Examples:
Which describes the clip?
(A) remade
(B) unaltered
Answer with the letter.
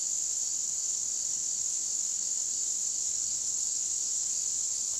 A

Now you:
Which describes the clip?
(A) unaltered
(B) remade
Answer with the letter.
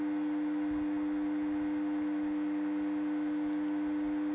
A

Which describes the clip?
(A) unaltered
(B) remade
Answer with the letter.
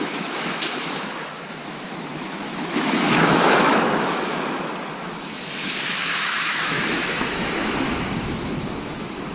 B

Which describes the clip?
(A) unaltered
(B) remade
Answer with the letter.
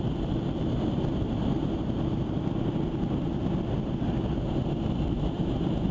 A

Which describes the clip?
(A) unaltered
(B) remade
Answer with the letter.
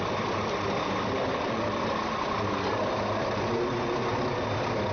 A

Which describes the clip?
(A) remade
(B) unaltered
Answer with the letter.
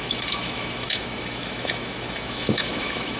A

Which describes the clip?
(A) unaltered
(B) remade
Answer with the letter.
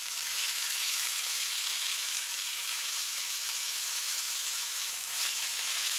B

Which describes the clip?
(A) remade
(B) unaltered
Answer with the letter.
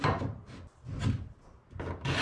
B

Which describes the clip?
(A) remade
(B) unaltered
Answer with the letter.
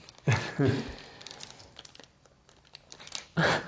B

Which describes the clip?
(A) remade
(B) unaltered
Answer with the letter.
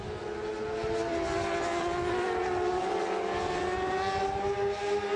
B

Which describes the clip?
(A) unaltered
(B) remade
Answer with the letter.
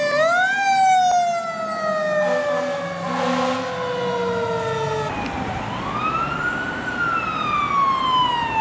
A